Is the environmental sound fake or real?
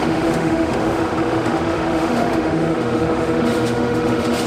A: fake